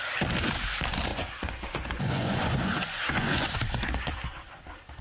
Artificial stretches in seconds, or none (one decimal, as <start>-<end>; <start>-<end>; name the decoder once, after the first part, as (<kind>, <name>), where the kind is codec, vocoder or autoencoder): 1.1-4.1 (vocoder, Vocos)